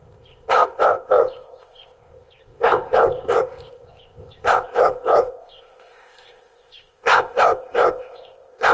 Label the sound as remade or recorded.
remade